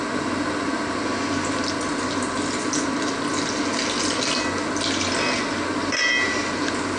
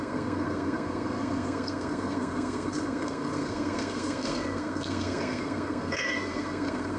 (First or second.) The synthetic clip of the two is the second